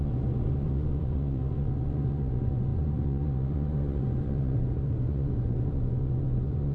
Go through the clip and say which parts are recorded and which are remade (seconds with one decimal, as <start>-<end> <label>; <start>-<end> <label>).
0.0-6.7 remade